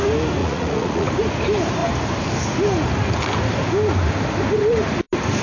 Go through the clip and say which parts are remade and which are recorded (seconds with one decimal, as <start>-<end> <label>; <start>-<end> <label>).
0.0-0.4 recorded; 0.4-1.1 remade; 1.1-5.4 recorded

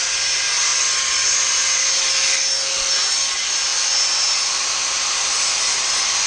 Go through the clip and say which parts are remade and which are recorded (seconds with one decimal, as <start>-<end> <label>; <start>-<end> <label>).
0.0-6.3 recorded

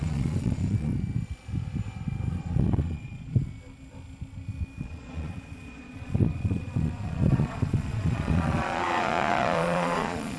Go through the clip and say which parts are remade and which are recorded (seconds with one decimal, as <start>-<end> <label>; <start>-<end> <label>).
0.0-0.9 remade; 0.9-2.3 recorded; 2.3-3.4 remade; 3.4-4.8 recorded; 4.8-10.4 remade

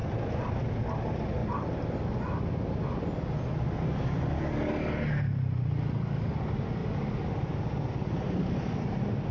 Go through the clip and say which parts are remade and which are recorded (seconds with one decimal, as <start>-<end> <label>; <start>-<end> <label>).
0.0-9.3 recorded

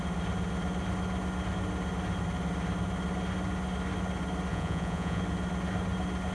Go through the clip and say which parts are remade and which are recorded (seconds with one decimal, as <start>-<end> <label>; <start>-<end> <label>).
0.0-4.5 recorded; 4.5-5.2 remade; 5.2-6.3 recorded

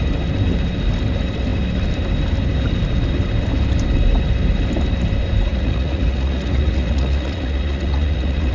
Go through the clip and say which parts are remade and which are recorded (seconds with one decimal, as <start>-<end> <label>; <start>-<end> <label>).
0.0-5.5 recorded; 5.5-8.5 remade